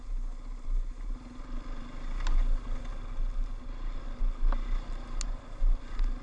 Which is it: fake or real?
real